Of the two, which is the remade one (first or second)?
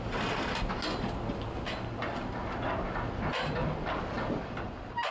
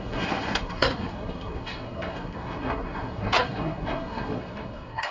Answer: second